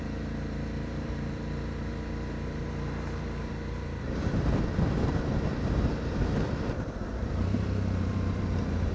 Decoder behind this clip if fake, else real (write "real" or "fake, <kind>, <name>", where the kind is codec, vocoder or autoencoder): fake, vocoder, BigVGAN v2